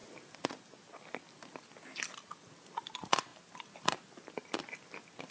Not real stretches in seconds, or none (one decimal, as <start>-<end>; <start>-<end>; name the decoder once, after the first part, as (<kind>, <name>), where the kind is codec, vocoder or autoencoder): none